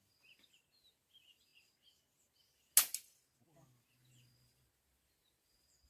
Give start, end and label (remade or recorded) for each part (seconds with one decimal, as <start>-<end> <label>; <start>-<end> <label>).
0.0-5.9 recorded

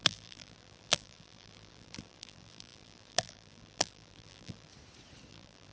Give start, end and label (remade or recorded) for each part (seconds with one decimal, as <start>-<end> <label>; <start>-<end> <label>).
0.0-4.7 remade; 4.7-5.3 recorded; 5.3-5.7 remade

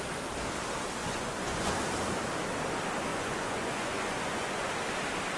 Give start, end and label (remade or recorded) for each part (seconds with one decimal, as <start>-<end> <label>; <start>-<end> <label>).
0.0-1.0 recorded; 1.0-1.7 remade; 1.7-3.1 recorded; 3.1-4.7 remade; 4.7-5.4 recorded

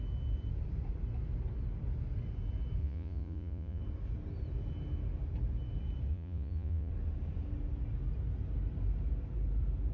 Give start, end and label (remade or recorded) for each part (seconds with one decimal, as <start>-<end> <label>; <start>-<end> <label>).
0.0-2.8 recorded; 2.8-3.8 remade; 3.8-6.1 recorded; 6.1-6.9 remade; 6.9-9.9 recorded

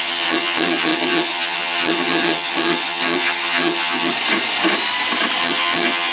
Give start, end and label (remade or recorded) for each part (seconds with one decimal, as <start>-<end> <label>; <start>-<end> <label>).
0.0-4.1 remade; 4.1-5.4 recorded; 5.4-6.1 remade